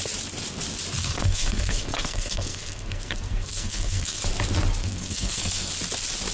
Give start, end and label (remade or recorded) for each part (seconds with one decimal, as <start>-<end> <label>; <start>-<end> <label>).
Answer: 0.0-1.0 recorded; 1.0-4.2 remade; 4.2-4.8 recorded; 4.8-5.7 remade; 5.7-6.3 recorded

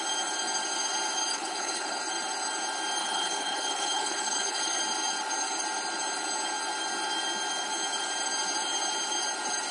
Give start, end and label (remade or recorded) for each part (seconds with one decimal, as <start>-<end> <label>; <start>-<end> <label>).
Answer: 0.0-1.3 recorded; 1.3-2.0 remade; 2.0-3.0 recorded; 3.0-4.8 remade; 4.8-9.7 recorded

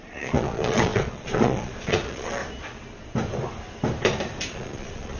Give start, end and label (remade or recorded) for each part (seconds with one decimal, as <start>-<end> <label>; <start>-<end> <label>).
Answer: 0.0-2.4 remade; 2.4-4.5 recorded; 4.5-5.2 remade

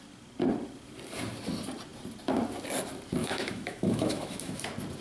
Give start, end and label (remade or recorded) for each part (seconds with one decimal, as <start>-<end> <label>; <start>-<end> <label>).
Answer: 0.0-3.2 recorded; 3.2-4.6 remade; 4.6-5.0 recorded